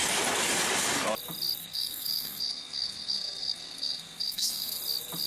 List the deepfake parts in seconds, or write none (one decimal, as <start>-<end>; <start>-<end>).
1.6-4.8